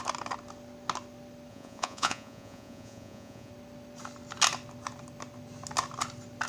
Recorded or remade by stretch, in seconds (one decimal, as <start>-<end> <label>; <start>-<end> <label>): 0.0-1.5 recorded; 1.5-3.5 remade; 3.5-6.5 recorded